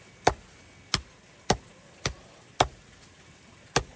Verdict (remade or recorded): recorded